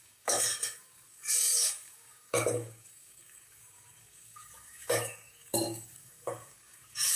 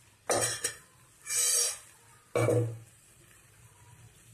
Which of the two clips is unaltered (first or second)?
second